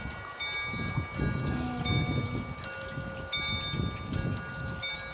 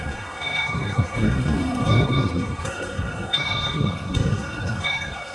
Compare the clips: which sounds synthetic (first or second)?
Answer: second